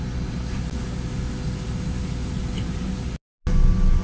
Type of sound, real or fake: real